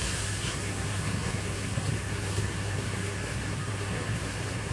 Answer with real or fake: fake